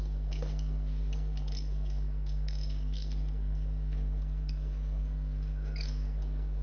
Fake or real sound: fake